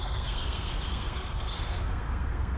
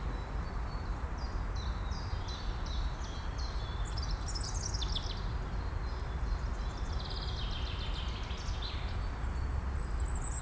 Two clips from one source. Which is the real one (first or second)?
second